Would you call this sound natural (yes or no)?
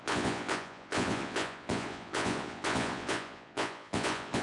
no